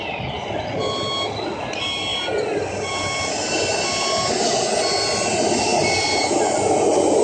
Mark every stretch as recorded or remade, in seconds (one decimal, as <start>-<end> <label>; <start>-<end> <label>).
0.0-7.2 recorded